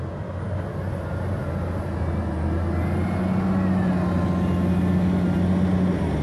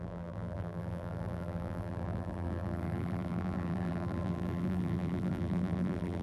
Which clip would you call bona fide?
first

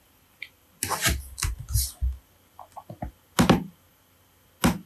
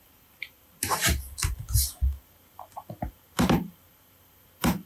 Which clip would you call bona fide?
first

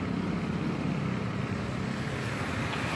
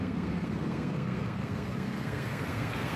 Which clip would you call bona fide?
first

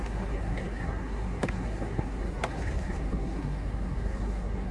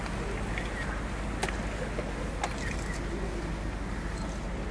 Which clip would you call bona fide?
second